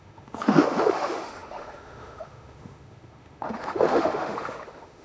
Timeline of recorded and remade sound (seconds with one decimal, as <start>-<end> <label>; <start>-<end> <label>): 0.0-5.0 remade